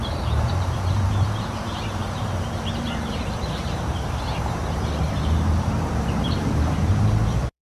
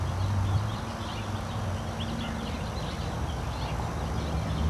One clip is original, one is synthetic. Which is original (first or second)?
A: second